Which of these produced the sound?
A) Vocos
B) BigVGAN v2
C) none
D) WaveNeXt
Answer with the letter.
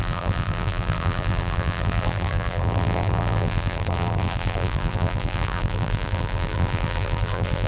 B